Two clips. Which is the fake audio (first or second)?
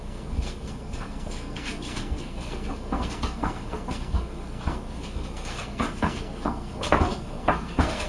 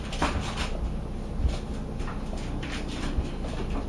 first